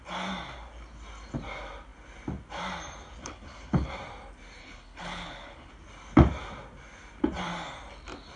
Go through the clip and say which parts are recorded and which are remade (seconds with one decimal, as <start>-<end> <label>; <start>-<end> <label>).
0.0-3.2 recorded; 3.2-3.9 remade; 3.9-4.6 recorded; 4.6-5.7 remade; 5.7-8.4 recorded

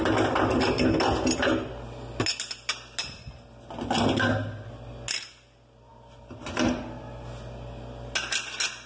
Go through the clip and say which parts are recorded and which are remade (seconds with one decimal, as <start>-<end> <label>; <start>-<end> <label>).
0.0-8.9 recorded

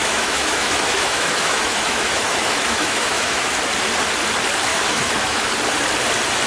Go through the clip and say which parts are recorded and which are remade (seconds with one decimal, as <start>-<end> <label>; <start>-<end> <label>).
0.0-3.5 remade; 3.5-4.7 recorded; 4.7-5.5 remade; 5.5-6.5 recorded

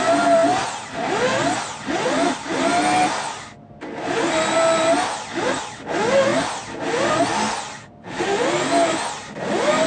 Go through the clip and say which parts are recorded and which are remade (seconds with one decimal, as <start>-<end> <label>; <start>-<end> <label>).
0.0-9.9 recorded

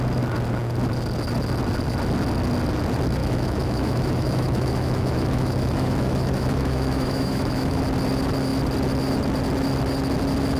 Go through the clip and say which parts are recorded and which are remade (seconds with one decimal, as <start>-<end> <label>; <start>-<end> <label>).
0.0-3.2 recorded; 3.2-7.8 remade; 7.8-10.6 recorded

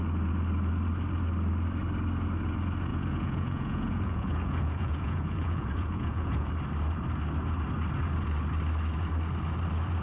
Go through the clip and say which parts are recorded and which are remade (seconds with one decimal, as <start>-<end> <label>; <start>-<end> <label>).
0.0-2.9 recorded; 2.9-6.5 remade; 6.5-10.0 recorded

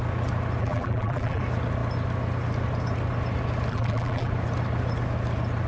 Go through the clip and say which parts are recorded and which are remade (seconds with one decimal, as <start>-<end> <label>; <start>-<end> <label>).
0.0-0.6 recorded; 0.6-1.4 remade; 1.4-3.7 recorded; 3.7-4.3 remade; 4.3-5.7 recorded

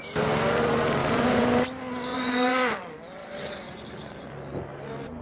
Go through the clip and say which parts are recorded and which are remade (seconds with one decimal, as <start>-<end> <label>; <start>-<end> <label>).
0.0-1.0 recorded; 1.0-1.5 remade; 1.5-2.1 recorded; 2.1-2.8 remade; 2.8-3.2 recorded; 3.2-4.3 remade; 4.3-5.2 recorded